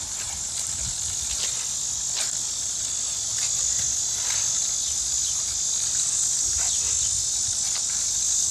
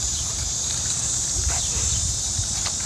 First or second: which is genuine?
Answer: first